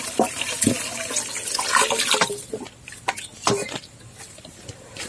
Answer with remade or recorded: recorded